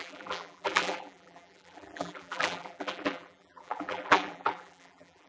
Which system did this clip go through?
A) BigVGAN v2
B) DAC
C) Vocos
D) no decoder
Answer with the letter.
A